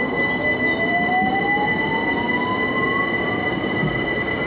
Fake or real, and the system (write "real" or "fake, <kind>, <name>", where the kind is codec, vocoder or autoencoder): real